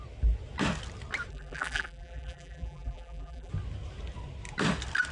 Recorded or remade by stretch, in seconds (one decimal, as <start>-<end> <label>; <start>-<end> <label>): 0.0-1.3 recorded; 1.3-3.5 remade; 3.5-5.1 recorded